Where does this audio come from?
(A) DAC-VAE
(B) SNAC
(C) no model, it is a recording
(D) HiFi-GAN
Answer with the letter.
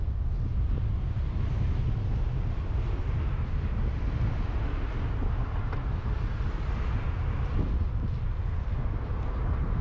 C